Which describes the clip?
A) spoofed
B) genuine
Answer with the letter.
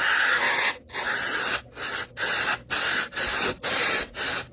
B